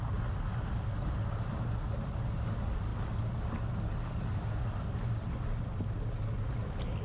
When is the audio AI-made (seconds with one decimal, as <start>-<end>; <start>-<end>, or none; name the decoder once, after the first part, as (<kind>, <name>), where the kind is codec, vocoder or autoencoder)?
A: none